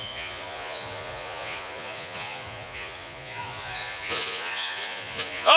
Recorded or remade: remade